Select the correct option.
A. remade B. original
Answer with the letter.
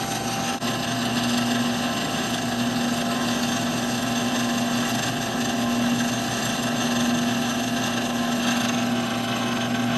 B